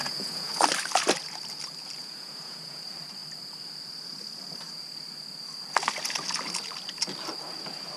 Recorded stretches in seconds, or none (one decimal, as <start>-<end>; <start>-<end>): 0.6-2.0; 2.8-8.0